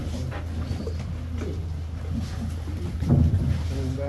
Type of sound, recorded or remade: recorded